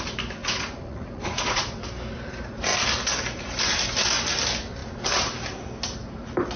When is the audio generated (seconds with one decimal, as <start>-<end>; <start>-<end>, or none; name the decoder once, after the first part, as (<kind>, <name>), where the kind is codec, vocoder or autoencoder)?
0.4-1.8 (vocoder, Vocos)